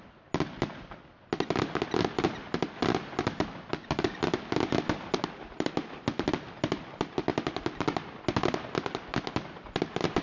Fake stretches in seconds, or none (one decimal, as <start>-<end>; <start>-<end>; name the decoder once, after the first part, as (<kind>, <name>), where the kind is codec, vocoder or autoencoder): none